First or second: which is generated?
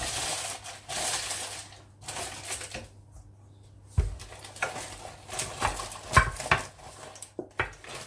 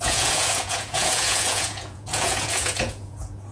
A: second